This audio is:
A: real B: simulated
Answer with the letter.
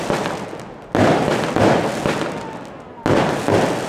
A